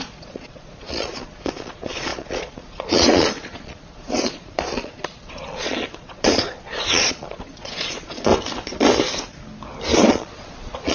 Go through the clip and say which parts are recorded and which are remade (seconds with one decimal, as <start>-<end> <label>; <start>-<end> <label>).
0.0-8.3 remade; 8.3-10.1 recorded; 10.1-10.9 remade